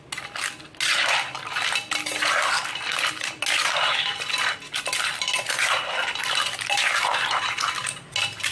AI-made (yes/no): no